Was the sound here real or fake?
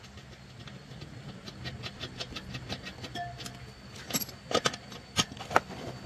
real